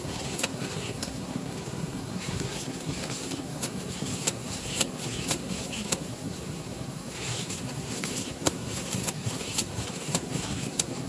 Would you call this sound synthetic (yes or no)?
yes